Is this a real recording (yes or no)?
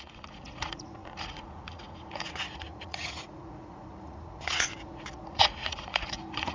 no